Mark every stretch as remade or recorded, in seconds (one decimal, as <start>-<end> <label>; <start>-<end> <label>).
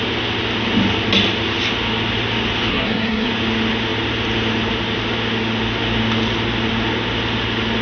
0.0-2.7 recorded; 2.7-3.3 remade; 3.3-7.8 recorded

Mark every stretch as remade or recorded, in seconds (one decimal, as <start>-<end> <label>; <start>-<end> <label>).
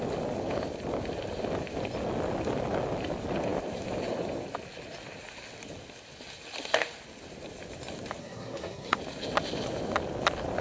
0.0-8.2 recorded; 8.2-9.0 remade; 9.0-10.6 recorded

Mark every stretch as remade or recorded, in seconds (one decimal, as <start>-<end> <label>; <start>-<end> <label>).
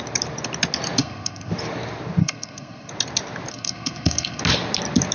0.0-1.0 recorded; 1.0-1.5 remade; 1.5-2.2 recorded; 2.2-2.9 remade; 2.9-3.5 recorded; 3.5-4.4 remade; 4.4-5.1 recorded